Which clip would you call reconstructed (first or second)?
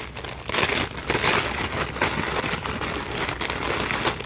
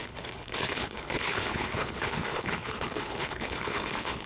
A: second